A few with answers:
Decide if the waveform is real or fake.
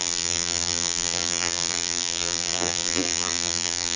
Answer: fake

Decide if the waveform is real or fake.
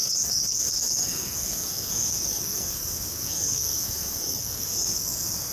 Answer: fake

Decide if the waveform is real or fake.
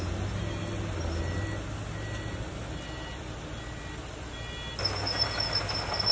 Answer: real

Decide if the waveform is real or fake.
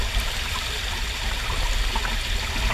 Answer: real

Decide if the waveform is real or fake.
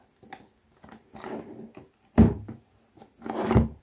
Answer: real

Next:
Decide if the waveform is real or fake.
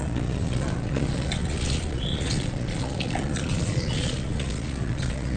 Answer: fake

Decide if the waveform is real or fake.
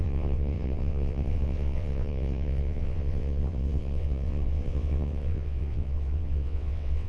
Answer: fake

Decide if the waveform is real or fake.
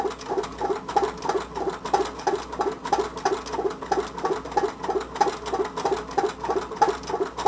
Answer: real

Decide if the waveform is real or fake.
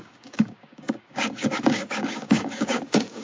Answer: fake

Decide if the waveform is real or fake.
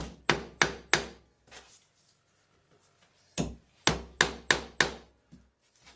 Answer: real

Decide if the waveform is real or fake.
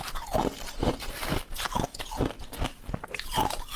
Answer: real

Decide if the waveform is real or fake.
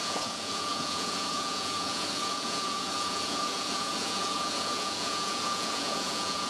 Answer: fake